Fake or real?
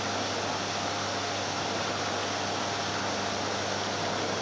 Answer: real